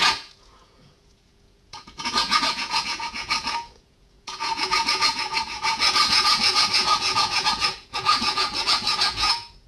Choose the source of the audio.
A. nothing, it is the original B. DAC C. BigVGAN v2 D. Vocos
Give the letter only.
D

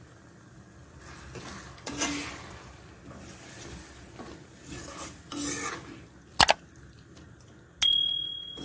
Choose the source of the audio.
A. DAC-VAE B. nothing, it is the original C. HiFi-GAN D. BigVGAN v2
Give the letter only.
B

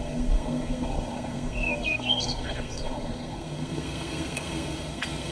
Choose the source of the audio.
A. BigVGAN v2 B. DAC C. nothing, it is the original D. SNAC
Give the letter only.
D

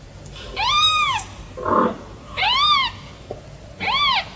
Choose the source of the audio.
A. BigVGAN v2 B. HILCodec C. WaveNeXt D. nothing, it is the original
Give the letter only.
D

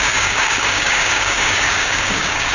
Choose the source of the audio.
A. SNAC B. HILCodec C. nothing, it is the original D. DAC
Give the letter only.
D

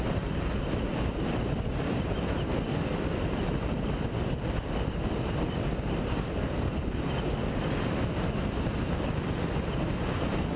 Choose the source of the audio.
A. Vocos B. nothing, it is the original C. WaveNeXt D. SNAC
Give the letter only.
B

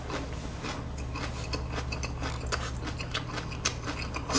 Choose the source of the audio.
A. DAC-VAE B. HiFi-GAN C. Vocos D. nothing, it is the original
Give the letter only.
D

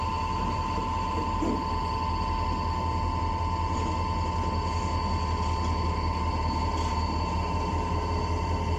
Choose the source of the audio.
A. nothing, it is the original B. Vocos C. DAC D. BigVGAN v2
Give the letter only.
A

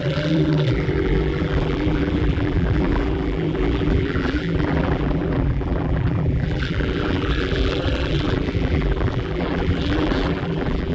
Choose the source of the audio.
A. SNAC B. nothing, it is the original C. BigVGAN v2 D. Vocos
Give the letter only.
C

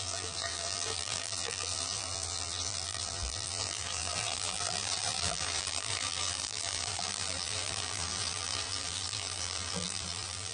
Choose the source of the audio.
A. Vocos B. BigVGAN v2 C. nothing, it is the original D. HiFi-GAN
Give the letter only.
B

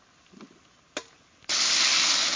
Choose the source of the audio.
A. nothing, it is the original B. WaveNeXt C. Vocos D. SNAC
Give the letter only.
A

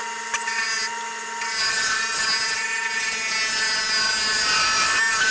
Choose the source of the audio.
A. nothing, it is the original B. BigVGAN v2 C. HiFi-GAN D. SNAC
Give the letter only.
A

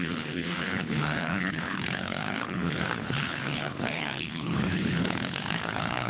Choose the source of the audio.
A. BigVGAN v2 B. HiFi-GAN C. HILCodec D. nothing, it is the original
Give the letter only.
C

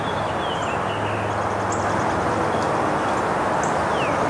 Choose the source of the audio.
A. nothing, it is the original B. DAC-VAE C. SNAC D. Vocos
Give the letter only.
A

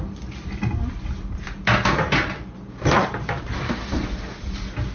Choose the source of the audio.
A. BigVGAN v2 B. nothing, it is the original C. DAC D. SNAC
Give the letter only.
B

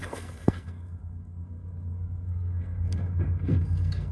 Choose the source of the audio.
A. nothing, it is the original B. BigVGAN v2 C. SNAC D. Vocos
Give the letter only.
C